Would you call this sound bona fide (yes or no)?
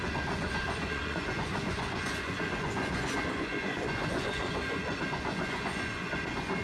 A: no